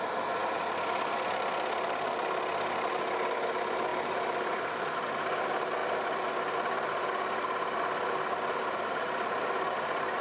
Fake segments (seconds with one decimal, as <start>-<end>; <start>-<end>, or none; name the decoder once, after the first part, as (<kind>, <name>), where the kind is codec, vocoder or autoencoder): 3.9-4.9 (vocoder, BigVGAN v2); 5.8-6.9